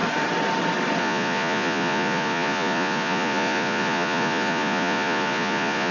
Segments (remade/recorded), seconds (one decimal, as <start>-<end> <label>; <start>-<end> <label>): 0.0-1.0 recorded; 1.0-5.9 remade